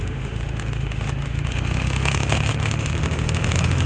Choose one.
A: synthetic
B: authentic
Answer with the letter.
A